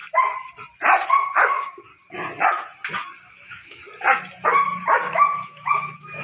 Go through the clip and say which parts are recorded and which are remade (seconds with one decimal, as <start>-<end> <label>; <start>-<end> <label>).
0.0-1.1 recorded; 1.1-1.9 remade; 1.9-3.3 recorded; 3.3-3.8 remade; 3.8-5.1 recorded; 5.1-6.2 remade